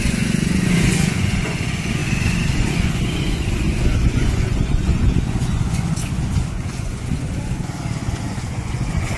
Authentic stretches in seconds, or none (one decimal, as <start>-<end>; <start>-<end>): none